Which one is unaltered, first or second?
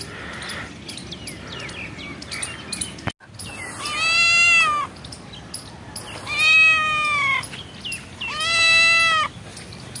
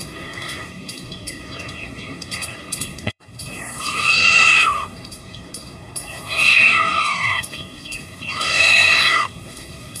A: first